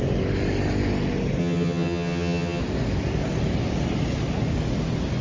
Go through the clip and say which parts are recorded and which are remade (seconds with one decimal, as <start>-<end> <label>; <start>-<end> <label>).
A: 0.0-1.4 recorded; 1.4-2.6 remade; 2.6-5.2 recorded